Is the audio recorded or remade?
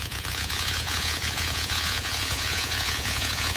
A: remade